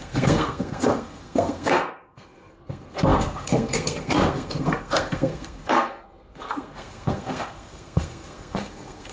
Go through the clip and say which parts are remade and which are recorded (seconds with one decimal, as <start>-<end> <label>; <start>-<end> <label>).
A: 0.0-9.1 remade

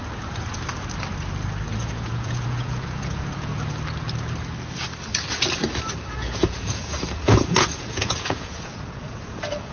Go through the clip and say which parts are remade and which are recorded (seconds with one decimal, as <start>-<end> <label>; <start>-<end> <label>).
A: 0.0-1.8 recorded; 1.8-3.5 remade; 3.5-6.1 recorded; 6.1-9.7 remade

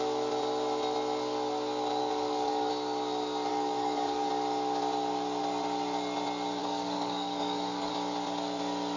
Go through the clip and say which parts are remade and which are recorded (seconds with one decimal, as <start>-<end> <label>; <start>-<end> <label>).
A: 0.0-2.0 recorded; 2.0-2.7 remade; 2.7-3.5 recorded; 3.5-4.3 remade; 4.3-6.6 recorded; 6.6-7.9 remade; 7.9-9.0 recorded

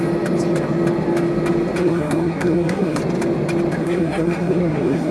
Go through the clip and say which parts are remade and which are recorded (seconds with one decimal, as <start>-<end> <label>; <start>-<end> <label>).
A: 0.0-1.8 recorded; 1.8-3.0 remade; 3.0-3.8 recorded; 3.8-5.1 remade